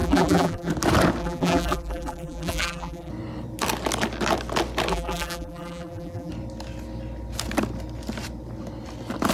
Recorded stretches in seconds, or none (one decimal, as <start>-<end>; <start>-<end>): 0.7-1.2; 3.1-4.9; 6.3-9.3